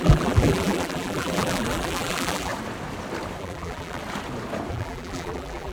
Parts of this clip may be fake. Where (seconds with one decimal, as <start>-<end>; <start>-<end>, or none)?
0.0-2.5; 3.4-4.0; 4.7-5.7